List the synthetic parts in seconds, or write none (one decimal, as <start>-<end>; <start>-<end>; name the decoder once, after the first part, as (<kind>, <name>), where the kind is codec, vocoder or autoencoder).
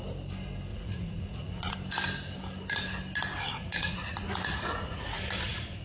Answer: 0.7-1.7 (vocoder, Vocos); 3.5-5.8